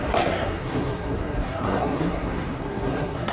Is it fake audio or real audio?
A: fake